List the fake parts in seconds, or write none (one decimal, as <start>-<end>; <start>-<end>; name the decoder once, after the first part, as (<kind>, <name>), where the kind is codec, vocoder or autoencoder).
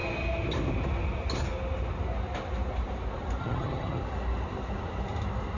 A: 3.4-4.0 (vocoder, HiFi-GAN)